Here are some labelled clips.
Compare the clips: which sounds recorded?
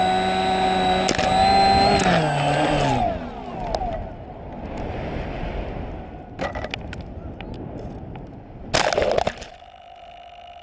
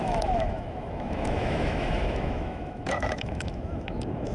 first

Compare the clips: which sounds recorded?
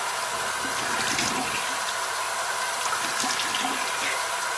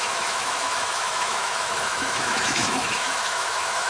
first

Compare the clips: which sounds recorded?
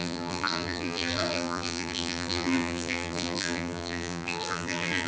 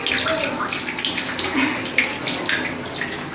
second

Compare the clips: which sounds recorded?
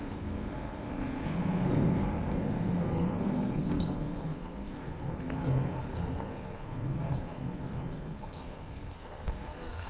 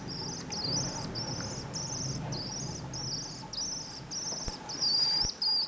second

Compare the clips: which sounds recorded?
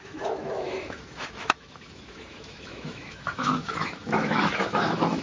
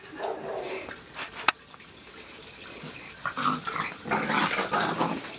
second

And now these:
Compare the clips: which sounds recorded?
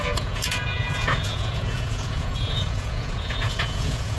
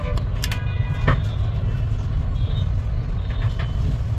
second